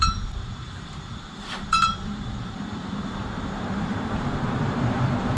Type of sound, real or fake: fake